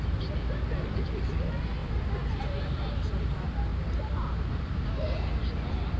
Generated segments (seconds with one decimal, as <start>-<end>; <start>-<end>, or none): 3.7-4.9